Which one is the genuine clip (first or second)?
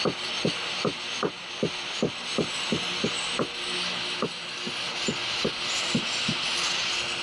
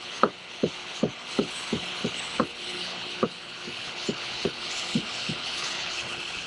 first